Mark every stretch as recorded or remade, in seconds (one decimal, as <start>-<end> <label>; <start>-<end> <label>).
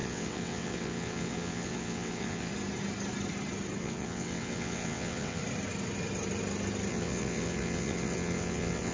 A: 0.0-2.5 remade; 2.5-3.8 recorded; 3.8-5.4 remade; 5.4-6.9 recorded; 6.9-8.9 remade